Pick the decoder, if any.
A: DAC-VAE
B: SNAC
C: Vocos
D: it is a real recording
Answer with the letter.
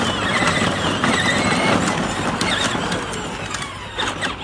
D